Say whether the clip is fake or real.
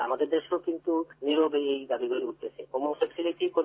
fake